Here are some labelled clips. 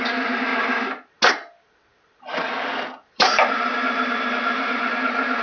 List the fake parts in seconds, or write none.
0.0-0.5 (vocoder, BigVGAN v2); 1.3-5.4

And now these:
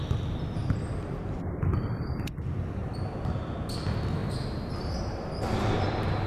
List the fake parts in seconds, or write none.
0.6-2.3 (vocoder, BigVGAN v2); 4.2-6.3